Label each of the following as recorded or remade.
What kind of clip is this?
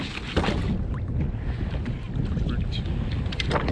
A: recorded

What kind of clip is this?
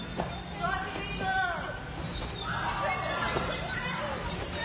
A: recorded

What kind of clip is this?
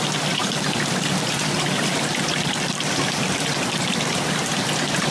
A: recorded